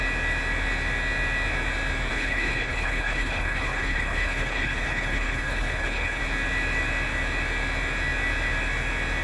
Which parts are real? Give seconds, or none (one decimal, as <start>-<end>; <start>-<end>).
0.0-2.1; 6.2-9.2